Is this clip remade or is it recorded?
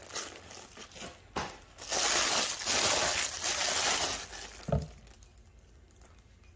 recorded